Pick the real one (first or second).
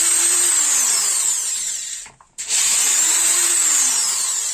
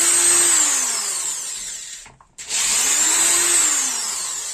second